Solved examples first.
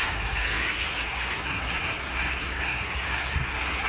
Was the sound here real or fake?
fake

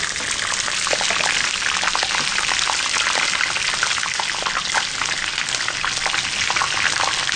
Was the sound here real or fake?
real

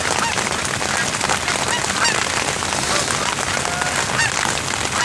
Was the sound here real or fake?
real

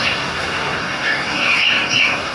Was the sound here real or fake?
fake